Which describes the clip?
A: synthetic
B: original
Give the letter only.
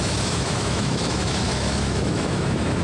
A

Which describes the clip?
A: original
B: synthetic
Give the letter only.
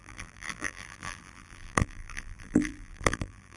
B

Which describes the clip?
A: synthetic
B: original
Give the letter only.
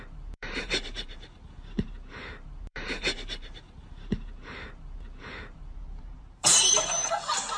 A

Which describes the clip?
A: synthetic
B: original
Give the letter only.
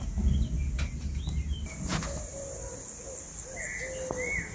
B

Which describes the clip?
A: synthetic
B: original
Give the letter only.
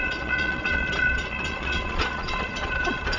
A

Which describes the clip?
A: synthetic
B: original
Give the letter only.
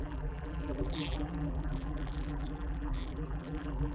A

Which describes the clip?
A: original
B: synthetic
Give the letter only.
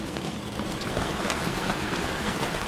B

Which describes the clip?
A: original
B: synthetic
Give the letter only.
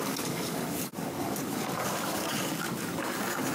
B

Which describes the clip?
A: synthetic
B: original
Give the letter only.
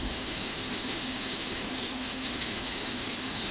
A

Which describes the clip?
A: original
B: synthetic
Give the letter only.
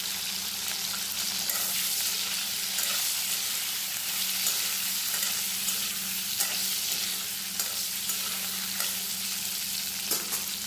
A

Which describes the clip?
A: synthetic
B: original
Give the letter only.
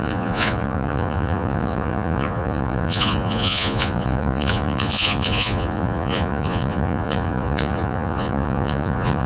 A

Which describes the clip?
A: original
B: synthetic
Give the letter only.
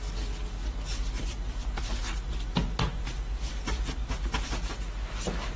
A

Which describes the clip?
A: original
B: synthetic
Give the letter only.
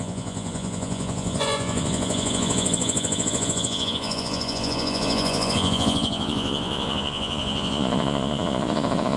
B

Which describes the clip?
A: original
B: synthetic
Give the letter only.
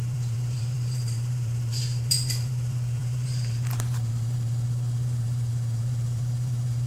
B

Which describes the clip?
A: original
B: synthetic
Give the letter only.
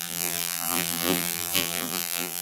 B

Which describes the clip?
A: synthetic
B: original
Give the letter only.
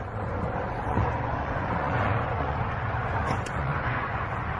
A